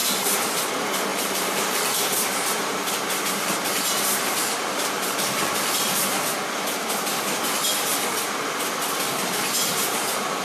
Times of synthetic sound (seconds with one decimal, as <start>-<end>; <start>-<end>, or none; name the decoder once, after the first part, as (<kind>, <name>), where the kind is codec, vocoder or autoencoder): 0.0-0.7 (vocoder, BigVGAN v2); 1.1-6.0